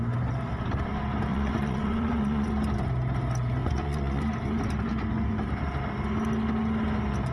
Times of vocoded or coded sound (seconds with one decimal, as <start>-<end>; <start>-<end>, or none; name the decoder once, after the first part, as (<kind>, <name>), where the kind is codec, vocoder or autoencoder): 1.3-2.5 (vocoder, Vocos); 3.6-4.2

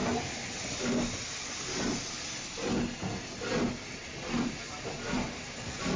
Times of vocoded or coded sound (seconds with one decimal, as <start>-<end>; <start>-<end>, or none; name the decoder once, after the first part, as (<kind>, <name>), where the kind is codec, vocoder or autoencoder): none

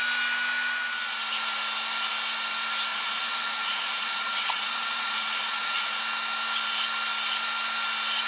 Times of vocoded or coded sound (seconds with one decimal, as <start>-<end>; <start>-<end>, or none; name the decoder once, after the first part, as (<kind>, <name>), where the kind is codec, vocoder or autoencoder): 2.9-6.0 (vocoder, Vocos)

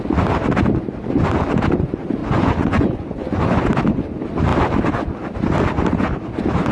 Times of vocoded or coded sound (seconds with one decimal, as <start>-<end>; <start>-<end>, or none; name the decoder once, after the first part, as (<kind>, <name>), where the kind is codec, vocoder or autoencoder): 2.2-3.6 (vocoder, Vocos)

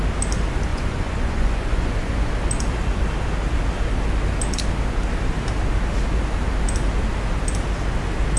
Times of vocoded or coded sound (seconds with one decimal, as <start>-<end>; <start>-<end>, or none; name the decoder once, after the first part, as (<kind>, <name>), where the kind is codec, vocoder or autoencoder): 0.7-2.3 (vocoder, Vocos)

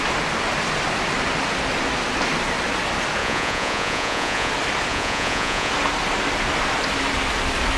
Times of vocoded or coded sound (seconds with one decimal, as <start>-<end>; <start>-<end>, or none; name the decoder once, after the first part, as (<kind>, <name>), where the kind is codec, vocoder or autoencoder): 3.2-4.5 (vocoder, Vocos); 4.9-5.7